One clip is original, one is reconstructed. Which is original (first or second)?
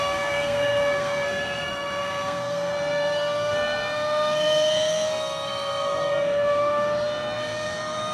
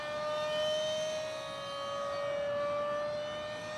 second